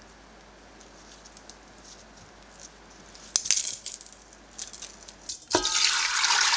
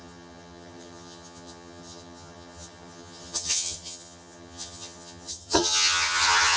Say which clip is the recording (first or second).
first